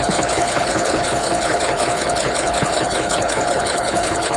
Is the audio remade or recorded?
remade